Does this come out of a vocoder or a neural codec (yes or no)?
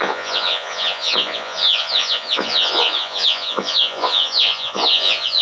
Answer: yes